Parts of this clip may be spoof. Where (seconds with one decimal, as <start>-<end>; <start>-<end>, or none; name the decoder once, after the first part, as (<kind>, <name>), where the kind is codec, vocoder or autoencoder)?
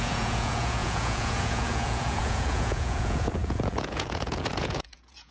0.0-5.3 (vocoder, Vocos)